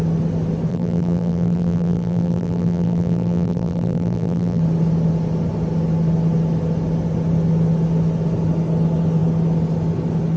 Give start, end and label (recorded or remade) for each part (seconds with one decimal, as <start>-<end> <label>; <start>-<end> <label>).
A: 0.0-0.7 recorded; 0.7-4.6 remade; 4.6-10.4 recorded